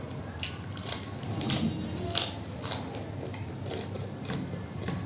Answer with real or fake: real